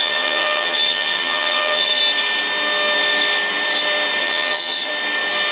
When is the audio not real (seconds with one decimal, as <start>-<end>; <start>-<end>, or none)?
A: 0.0-2.0; 4.2-4.9